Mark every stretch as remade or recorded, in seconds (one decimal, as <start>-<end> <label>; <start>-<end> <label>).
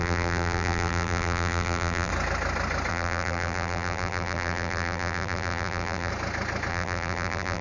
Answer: 0.0-2.1 remade; 2.1-2.9 recorded; 2.9-6.1 remade; 6.1-6.7 recorded; 6.7-7.6 remade